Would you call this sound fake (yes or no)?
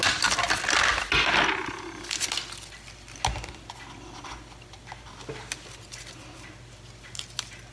no